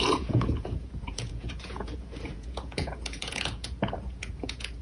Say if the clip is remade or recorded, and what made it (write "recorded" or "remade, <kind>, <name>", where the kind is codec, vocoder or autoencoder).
remade, vocoder, Vocos